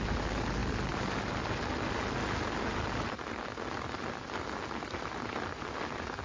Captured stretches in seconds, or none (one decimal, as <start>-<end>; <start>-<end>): 0.0-6.2